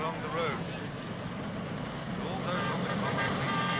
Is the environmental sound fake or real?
real